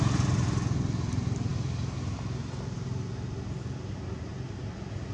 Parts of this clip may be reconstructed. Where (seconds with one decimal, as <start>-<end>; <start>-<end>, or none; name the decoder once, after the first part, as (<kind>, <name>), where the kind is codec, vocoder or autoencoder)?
none